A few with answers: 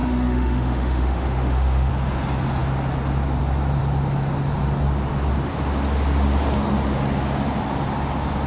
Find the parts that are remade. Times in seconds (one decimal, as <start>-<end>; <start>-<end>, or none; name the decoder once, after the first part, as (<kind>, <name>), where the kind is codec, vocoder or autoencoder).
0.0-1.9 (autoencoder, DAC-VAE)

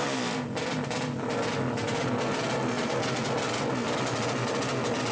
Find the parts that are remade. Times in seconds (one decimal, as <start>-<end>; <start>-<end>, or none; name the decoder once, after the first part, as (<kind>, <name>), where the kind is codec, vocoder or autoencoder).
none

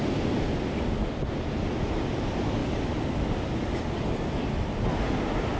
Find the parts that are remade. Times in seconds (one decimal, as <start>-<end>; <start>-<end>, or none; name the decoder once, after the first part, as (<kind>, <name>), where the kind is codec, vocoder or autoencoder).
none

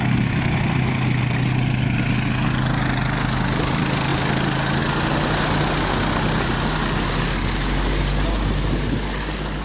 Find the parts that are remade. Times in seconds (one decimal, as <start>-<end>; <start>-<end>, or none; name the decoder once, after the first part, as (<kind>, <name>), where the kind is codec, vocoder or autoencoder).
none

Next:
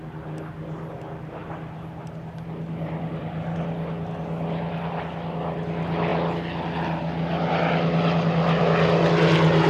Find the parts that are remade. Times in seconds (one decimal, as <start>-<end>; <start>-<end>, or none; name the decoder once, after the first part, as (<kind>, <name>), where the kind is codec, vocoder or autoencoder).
none